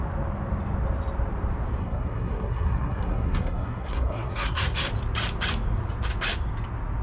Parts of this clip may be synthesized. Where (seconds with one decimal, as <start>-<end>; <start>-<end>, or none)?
1.8-4.9